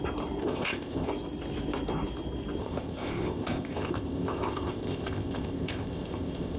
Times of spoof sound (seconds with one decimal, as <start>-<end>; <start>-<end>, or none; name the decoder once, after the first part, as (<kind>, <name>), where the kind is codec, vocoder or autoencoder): 0.4-1.1 (codec, ZipCodec); 2.6-6.6